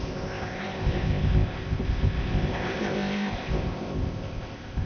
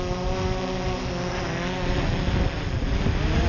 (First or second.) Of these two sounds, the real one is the second